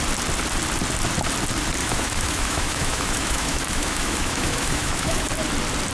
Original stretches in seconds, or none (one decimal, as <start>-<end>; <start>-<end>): 0.0-1.8; 5.3-5.9